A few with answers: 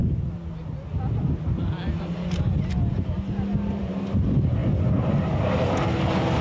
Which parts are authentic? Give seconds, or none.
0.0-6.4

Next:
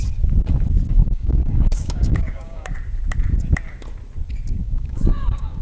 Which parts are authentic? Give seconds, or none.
0.0-1.0; 2.7-4.6

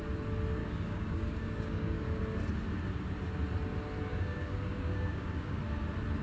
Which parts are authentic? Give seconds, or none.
0.0-0.6; 2.2-4.1; 5.6-6.2